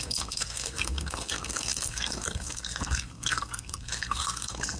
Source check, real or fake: fake